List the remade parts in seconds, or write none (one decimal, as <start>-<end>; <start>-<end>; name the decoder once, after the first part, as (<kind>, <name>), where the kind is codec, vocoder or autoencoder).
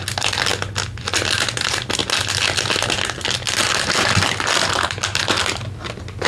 none